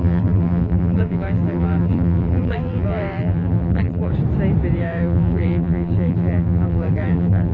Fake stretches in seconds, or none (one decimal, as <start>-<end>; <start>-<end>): 0.0-4.1; 4.8-7.5